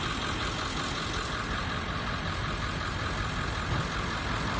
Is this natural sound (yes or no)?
yes